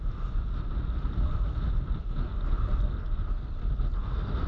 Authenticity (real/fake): real